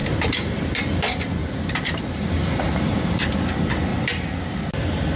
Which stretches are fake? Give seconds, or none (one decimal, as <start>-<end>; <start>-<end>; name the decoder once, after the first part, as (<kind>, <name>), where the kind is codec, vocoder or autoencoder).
0.0-0.6 (vocoder, BigVGAN v2); 1.4-3.4